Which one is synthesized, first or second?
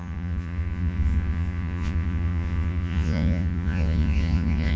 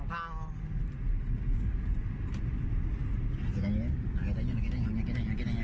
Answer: first